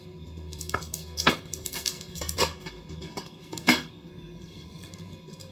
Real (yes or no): no